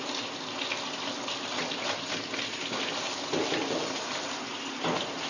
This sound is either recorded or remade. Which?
recorded